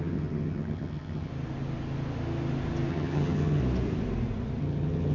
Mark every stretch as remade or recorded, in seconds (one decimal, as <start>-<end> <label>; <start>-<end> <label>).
0.0-1.3 remade; 1.3-2.9 recorded; 2.9-3.6 remade; 3.6-4.6 recorded; 4.6-5.1 remade